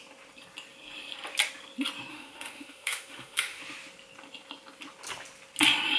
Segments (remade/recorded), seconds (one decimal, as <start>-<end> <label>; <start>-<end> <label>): 0.0-2.1 recorded; 2.1-3.6 remade; 3.6-6.0 recorded